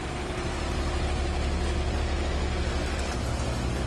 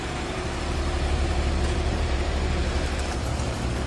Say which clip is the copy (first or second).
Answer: second